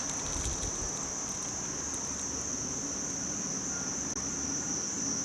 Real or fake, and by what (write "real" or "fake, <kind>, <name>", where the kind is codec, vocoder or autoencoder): real